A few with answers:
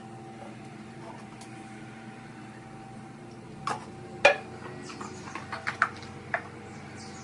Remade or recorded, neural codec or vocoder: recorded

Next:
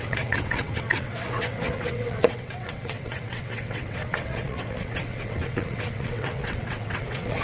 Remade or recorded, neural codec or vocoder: remade, vocoder, WaveNeXt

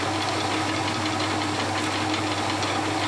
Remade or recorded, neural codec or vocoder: recorded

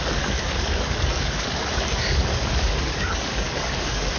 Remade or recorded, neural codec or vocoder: remade, codec, DAC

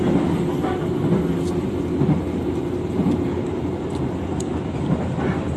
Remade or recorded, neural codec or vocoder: recorded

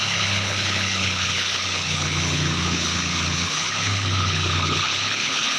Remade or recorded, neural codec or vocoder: remade, codec, HILCodec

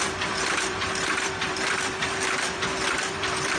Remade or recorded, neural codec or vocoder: remade, vocoder, BigVGAN v2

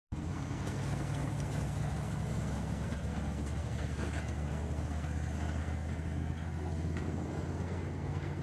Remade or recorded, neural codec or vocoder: remade, codec, SNAC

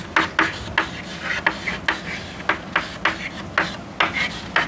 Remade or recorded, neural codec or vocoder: recorded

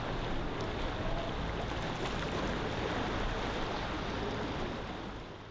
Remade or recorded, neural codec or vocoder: recorded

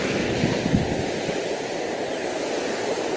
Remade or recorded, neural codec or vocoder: recorded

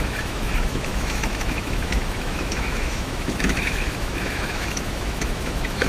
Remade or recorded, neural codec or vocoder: remade, autoencoder, DAC-VAE